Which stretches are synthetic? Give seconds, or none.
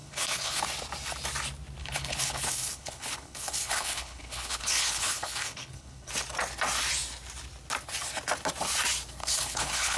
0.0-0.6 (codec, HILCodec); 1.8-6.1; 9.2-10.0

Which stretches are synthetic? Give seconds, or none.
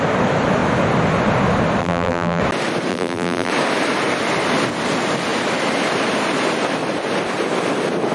1.8-2.4 (vocoder, BigVGAN v2); 2.9-3.5